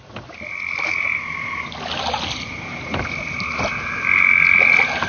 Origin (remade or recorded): remade